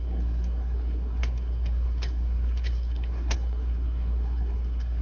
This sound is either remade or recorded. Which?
remade